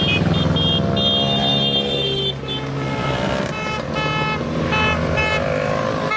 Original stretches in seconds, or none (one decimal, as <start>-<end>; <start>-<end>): 0.0-6.2